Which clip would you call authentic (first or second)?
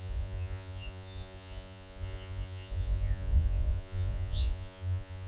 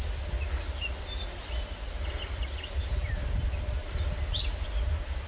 second